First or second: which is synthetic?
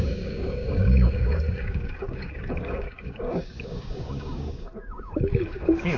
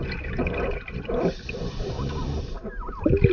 first